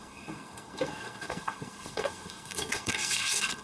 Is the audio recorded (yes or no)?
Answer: no